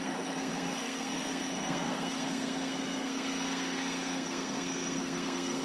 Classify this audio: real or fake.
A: fake